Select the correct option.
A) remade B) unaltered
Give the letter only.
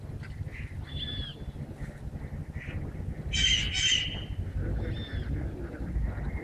B